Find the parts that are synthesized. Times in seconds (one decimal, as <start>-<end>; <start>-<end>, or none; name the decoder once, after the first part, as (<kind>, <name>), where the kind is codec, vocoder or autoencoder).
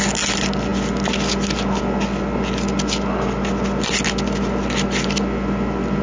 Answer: none